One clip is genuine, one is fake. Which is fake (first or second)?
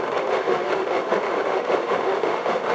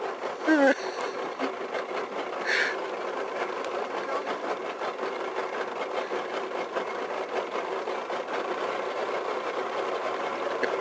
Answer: first